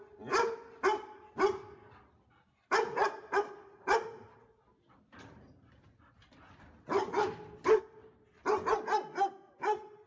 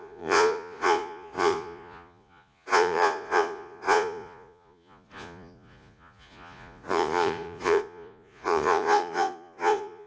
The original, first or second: first